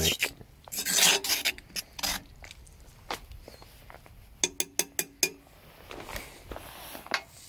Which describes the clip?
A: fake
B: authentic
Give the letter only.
B